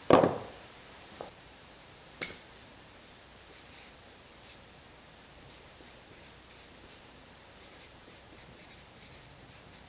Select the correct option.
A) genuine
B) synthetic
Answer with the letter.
B